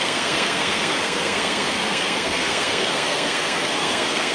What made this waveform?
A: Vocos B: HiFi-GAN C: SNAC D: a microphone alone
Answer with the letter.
C